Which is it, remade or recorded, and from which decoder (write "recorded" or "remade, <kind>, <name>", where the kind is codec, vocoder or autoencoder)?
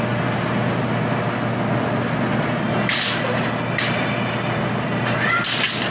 recorded